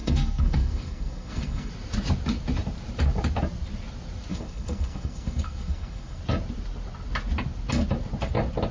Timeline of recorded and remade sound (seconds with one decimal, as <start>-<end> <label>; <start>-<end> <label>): 0.0-1.7 remade; 1.7-4.3 recorded; 4.3-6.2 remade; 6.2-8.7 recorded